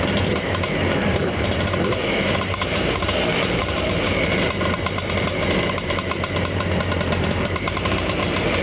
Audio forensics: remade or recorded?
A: remade